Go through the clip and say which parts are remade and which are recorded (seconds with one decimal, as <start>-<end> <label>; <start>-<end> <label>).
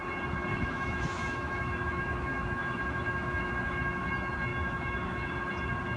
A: 0.0-0.5 recorded; 0.5-4.1 remade; 4.1-4.5 recorded; 4.5-5.4 remade; 5.4-6.0 recorded